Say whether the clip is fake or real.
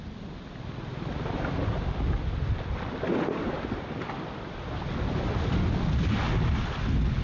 real